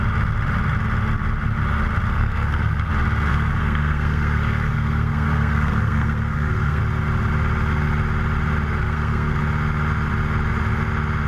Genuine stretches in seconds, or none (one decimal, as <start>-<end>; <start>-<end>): 0.0-2.1; 2.9-3.3; 6.8-8.8; 9.4-11.3